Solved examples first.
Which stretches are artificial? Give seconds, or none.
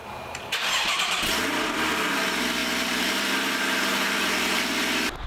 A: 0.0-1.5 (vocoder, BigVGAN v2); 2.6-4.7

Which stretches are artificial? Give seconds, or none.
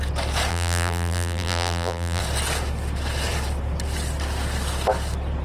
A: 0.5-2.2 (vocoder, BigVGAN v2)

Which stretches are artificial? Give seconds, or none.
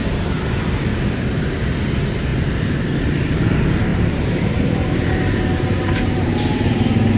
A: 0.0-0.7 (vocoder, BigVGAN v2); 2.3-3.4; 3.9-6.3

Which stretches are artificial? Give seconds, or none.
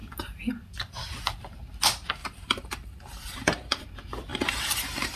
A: 2.2-3.8 (vocoder, BigVGAN v2); 4.3-5.2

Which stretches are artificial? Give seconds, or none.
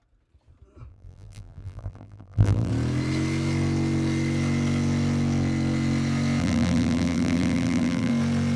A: 0.9-2.7 (vocoder, BigVGAN v2); 6.4-8.1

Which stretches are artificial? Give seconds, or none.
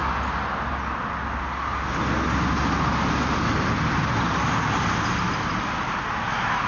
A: none